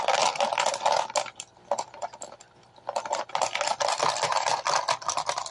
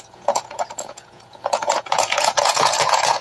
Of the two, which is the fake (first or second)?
second